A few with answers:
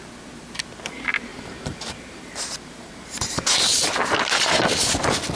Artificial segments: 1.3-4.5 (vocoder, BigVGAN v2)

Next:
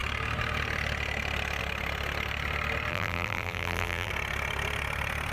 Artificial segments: 2.9-4.1 (vocoder, BigVGAN v2)